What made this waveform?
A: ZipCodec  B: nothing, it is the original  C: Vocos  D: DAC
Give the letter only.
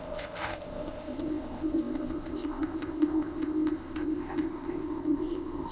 A